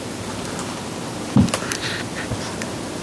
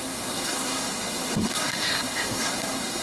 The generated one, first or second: second